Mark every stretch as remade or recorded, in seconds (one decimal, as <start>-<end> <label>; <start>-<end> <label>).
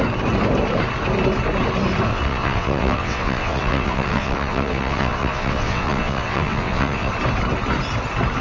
0.0-2.1 recorded; 2.1-7.1 remade; 7.1-8.4 recorded